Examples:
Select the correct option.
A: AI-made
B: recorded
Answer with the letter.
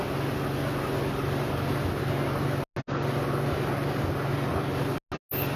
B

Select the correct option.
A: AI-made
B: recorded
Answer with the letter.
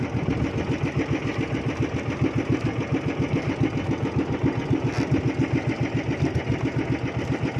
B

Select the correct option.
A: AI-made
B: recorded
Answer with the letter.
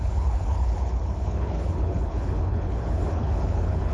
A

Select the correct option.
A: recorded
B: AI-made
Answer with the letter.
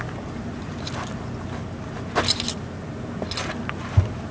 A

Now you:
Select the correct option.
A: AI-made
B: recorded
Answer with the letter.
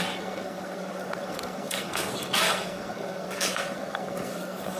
A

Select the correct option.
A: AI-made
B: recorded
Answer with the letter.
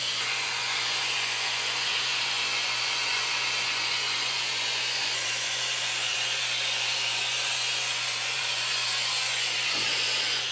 A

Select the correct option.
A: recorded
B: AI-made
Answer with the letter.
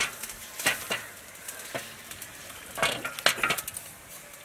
A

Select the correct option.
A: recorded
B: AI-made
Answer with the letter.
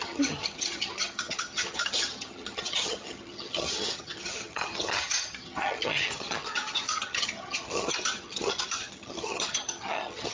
B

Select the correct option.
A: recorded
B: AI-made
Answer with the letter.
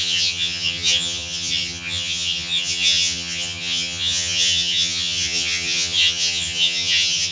B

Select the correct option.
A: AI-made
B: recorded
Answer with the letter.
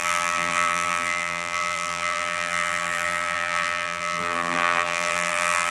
A